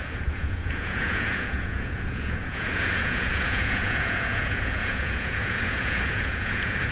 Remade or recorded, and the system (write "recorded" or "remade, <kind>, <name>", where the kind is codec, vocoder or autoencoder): remade, vocoder, Vocos